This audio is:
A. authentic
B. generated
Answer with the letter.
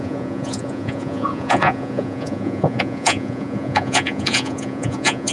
B